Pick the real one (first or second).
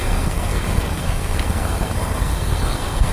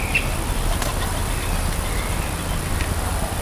second